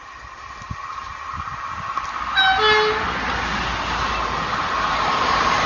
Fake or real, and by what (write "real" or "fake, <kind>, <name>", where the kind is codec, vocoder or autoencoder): real